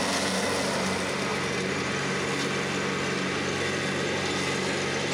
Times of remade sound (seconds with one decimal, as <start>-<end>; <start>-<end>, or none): 1.3-2.1